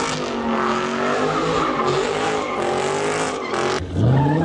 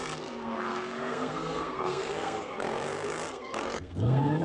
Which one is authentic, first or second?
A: first